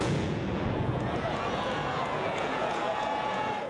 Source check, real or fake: fake